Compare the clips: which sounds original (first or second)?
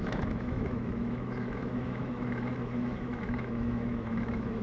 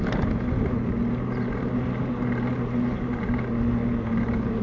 second